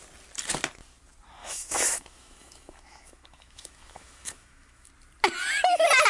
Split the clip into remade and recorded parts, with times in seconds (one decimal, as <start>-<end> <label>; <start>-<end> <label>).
0.0-1.4 recorded; 1.4-4.9 remade; 4.9-6.1 recorded